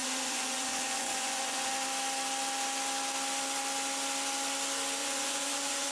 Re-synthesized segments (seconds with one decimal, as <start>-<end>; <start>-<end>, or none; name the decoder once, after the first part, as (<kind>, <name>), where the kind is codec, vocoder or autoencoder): 0.0-1.7 (vocoder, Vocos); 5.0-5.9